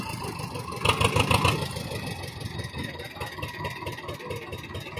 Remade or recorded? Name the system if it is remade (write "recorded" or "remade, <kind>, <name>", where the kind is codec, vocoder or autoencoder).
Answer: recorded